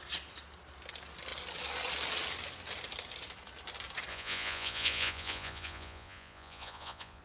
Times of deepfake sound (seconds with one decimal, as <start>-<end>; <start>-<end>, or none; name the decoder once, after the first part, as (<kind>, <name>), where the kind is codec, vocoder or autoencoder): 4.1-7.2 (vocoder, Vocos)